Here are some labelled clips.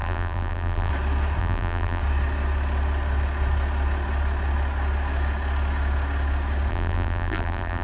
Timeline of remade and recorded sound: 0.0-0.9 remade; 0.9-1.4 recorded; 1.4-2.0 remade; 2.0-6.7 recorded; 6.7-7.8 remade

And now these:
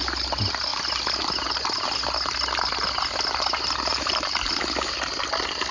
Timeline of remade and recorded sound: 0.0-3.9 recorded; 3.9-4.5 remade; 4.5-5.7 recorded

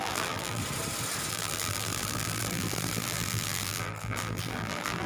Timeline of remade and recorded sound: 0.0-0.6 remade; 0.6-1.3 recorded; 1.3-5.1 remade

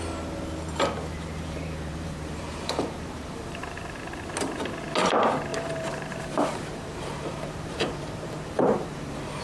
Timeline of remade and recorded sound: 0.0-1.1 recorded; 1.1-4.2 remade; 4.2-5.5 recorded; 5.5-9.4 remade

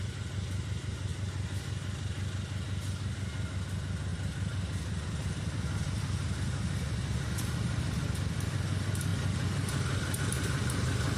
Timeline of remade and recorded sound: 0.0-4.1 recorded; 4.1-7.8 remade; 7.8-9.1 recorded; 9.1-10.2 remade; 10.2-11.2 recorded

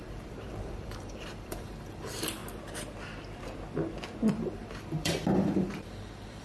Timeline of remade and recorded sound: 0.0-2.4 remade; 2.4-4.3 recorded; 4.3-6.4 remade

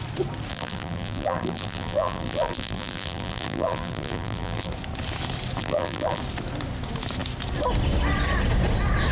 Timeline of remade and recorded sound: 0.0-0.5 recorded; 0.5-4.7 remade; 4.7-5.6 recorded; 5.6-6.2 remade; 6.2-9.1 recorded